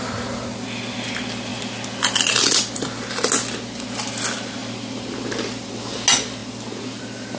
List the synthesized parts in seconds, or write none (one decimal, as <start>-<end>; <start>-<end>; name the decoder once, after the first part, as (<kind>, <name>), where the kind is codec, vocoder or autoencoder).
none